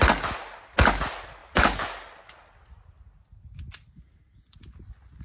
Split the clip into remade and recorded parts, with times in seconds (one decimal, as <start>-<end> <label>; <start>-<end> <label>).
0.0-5.2 recorded